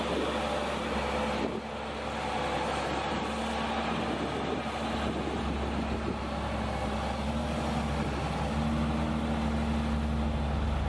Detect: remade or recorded recorded